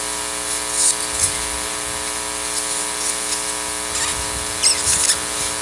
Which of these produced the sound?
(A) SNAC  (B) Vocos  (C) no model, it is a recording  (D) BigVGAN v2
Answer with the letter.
C